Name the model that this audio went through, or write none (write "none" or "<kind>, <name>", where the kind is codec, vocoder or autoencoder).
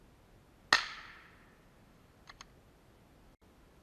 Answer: none